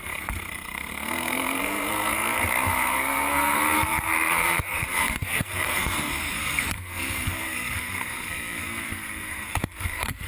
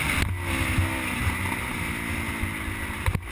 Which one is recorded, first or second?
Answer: second